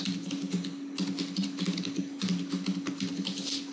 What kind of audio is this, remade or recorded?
recorded